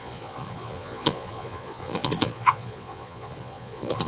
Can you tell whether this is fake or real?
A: fake